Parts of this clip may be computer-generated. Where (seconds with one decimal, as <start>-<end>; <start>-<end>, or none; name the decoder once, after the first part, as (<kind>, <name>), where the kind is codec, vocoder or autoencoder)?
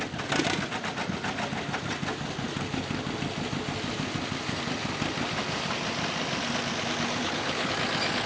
7.2-7.7 (codec, HILCodec)